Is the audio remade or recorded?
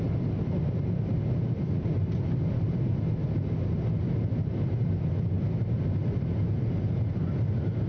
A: recorded